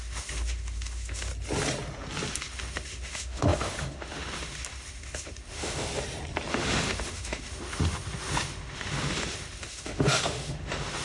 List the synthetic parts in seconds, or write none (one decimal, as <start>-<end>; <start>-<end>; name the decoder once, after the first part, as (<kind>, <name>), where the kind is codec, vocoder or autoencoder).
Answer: 0.0-1.3 (autoencoder, DAC-VAE); 2.3-5.9; 6.5-11.0